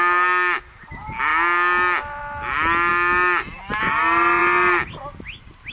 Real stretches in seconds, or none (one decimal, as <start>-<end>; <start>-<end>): 0.0-5.7